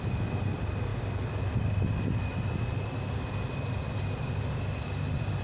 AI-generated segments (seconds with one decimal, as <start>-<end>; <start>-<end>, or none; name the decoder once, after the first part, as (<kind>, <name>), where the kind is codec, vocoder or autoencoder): none